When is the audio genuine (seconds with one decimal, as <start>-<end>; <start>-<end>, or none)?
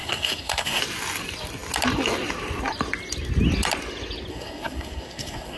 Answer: 0.8-4.3